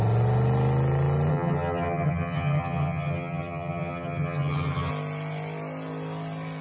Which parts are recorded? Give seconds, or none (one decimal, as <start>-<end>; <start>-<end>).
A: 0.0-1.3; 4.9-6.6